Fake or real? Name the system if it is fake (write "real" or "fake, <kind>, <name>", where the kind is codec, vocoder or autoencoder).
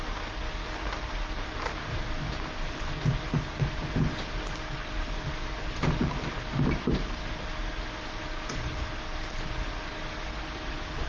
real